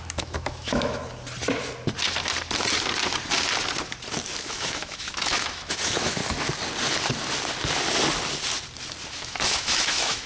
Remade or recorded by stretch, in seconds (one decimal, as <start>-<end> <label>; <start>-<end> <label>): 0.0-1.0 remade; 1.0-4.4 recorded; 4.4-6.2 remade; 6.2-9.1 recorded; 9.1-10.3 remade